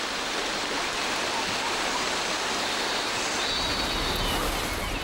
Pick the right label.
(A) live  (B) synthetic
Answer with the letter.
A